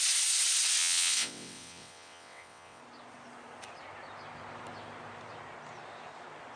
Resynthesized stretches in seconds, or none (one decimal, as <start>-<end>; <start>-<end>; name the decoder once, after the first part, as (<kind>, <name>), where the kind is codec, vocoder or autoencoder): 0.8-2.8 (vocoder, WaveNeXt)